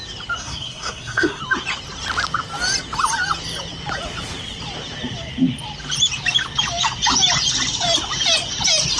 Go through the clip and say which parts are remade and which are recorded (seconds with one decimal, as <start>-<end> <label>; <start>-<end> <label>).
0.0-0.4 recorded; 0.4-1.4 remade; 1.4-9.0 recorded